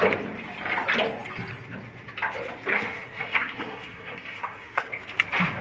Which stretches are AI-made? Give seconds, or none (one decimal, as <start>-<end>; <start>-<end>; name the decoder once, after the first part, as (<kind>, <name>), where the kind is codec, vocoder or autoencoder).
2.7-4.9 (codec, SNAC)